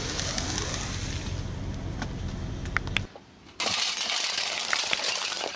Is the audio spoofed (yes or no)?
no